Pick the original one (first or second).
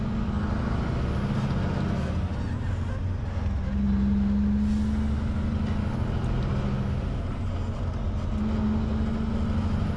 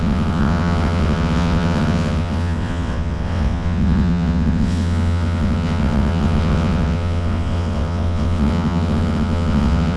first